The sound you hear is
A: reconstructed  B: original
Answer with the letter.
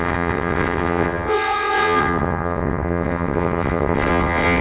A